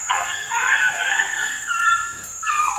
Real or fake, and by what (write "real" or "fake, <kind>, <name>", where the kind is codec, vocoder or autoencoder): fake, codec, SNAC